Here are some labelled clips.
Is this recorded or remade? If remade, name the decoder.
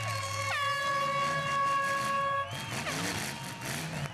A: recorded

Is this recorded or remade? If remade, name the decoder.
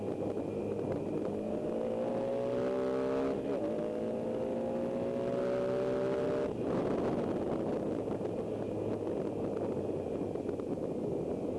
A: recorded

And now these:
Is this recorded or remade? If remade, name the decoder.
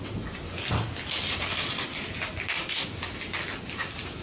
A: recorded